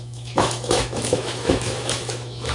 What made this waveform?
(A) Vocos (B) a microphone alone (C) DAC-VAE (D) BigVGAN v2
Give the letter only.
C